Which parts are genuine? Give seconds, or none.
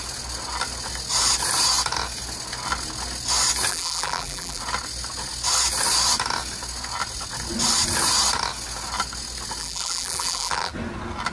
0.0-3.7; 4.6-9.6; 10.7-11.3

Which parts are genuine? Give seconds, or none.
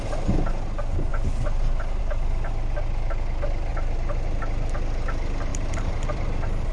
0.0-3.7; 4.4-5.5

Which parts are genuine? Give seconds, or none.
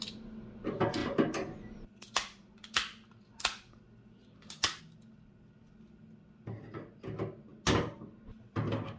0.0-9.0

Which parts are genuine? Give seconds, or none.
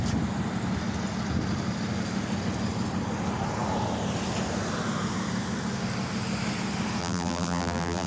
0.0-7.0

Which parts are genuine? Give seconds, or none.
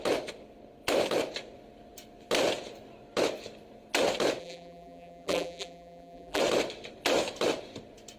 0.0-4.4; 6.4-8.2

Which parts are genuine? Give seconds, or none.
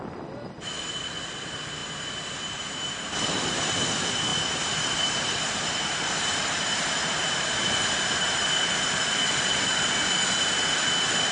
0.0-1.8; 2.9-4.3; 8.5-11.3